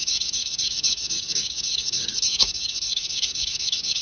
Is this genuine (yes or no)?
no